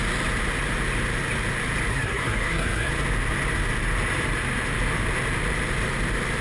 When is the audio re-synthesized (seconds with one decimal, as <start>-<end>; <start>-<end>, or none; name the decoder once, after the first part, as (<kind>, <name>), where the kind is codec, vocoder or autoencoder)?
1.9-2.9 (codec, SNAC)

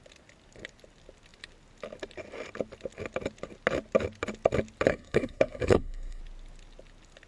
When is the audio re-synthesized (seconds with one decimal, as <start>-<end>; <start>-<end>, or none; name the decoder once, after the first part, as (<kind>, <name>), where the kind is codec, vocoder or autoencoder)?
4.9-6.2 (codec, SNAC)

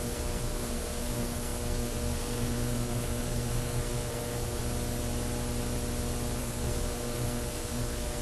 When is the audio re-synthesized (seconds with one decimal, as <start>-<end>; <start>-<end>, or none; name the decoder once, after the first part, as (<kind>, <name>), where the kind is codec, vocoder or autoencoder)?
0.0-4.6 (codec, SNAC); 6.4-8.2

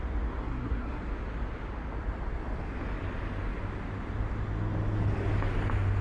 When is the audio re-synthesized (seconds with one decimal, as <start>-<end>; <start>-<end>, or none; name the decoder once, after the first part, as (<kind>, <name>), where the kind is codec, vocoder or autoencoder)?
0.4-1.0 (codec, SNAC)

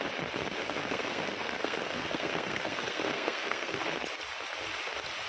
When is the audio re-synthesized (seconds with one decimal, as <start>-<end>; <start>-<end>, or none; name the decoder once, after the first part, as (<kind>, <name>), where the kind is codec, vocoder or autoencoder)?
0.6-3.8 (codec, SNAC)

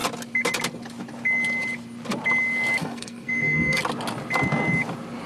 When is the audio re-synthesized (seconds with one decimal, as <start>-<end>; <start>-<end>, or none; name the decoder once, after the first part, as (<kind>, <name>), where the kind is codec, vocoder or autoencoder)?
2.8-3.8 (codec, SNAC)

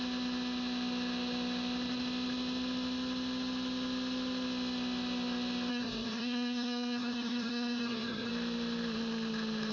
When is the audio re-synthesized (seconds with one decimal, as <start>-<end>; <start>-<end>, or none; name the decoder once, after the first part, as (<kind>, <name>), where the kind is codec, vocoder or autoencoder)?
5.7-8.3 (codec, SNAC)

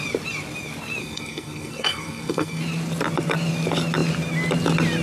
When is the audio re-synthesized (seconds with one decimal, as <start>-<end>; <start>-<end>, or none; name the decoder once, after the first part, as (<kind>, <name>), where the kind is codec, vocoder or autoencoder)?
1.0-2.6 (codec, SNAC)